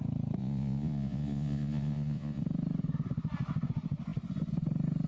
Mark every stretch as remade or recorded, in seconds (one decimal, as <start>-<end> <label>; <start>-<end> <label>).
0.0-0.4 recorded; 0.4-2.4 remade; 2.4-5.1 recorded